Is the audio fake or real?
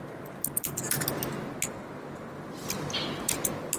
real